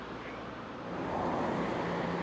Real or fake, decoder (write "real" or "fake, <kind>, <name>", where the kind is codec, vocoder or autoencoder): real